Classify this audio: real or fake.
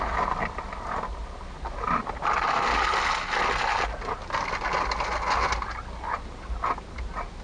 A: real